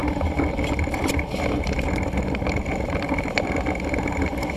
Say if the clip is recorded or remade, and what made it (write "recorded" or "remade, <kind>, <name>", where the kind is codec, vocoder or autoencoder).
recorded